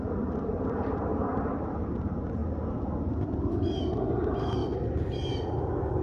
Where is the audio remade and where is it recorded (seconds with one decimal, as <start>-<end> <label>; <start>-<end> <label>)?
0.0-1.1 remade; 1.1-1.9 recorded; 1.9-2.4 remade; 2.4-3.8 recorded; 3.8-4.6 remade; 4.6-6.0 recorded